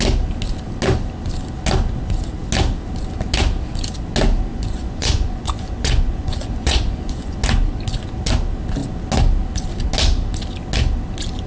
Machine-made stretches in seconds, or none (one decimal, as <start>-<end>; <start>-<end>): 4.5-7.4